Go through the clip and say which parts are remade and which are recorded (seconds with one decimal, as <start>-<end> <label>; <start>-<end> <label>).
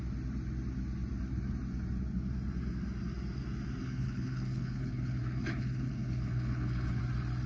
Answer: 0.0-3.8 recorded; 3.8-7.0 remade; 7.0-7.5 recorded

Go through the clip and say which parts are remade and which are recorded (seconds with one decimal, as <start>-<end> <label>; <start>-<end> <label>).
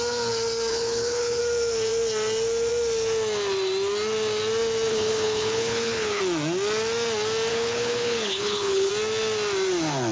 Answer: 0.0-0.7 recorded; 0.7-1.4 remade; 1.4-4.9 recorded; 4.9-6.2 remade; 6.2-7.5 recorded; 7.5-8.9 remade; 8.9-10.1 recorded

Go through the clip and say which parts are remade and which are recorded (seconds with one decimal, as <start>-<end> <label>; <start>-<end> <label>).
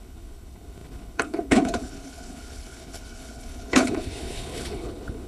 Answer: 0.0-5.3 remade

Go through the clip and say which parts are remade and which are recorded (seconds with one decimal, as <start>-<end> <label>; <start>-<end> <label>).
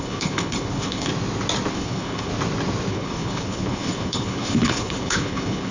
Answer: 0.0-1.1 remade; 1.1-1.7 recorded; 1.7-2.3 remade; 2.3-2.9 recorded; 2.9-5.7 remade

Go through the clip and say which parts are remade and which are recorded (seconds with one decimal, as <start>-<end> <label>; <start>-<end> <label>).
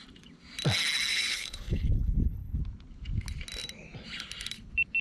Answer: 0.0-1.1 recorded; 1.1-2.6 remade; 2.6-5.0 recorded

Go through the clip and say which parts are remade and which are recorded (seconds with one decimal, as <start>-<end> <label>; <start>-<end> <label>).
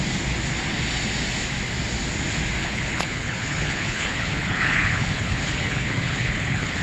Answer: 0.0-2.6 recorded; 2.6-6.8 remade